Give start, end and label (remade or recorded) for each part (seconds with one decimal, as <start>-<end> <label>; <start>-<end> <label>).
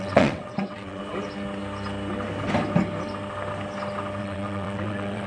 0.0-1.0 remade; 1.0-4.2 recorded; 4.2-5.3 remade